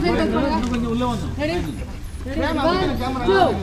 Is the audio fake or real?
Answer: real